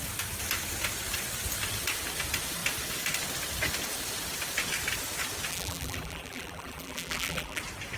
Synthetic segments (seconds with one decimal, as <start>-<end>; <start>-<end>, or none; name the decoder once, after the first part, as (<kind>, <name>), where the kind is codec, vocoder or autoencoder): 5.5-7.6 (vocoder, BigVGAN v2)